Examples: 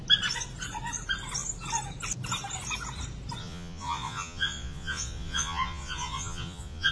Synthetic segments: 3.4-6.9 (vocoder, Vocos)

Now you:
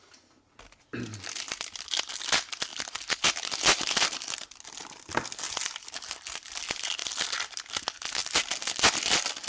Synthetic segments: none